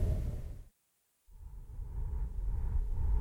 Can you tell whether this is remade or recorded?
recorded